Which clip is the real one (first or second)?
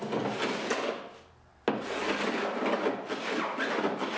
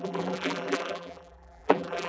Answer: first